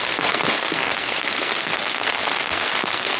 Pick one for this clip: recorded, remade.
remade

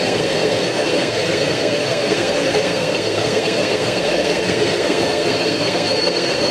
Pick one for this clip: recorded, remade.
remade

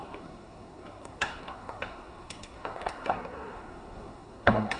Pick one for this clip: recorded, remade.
remade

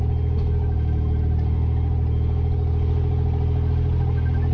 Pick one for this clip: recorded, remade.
recorded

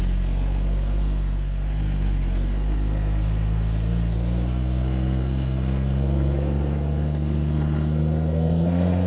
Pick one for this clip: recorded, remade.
remade